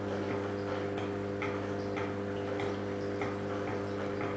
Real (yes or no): yes